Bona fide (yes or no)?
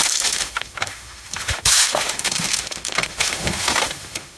no